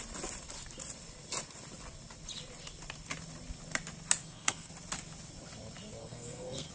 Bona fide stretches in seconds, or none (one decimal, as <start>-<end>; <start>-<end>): 0.0-4.2; 4.7-6.0